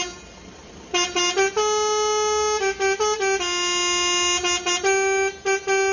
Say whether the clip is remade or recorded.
recorded